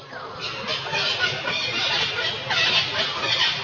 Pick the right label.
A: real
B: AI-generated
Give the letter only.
A